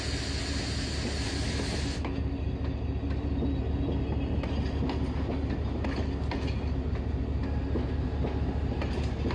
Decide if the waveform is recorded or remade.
recorded